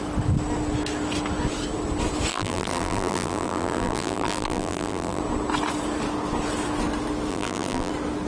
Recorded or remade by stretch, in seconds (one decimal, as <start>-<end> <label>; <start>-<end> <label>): 0.0-2.3 recorded; 2.3-5.2 remade; 5.2-7.3 recorded; 7.3-7.9 remade; 7.9-8.3 recorded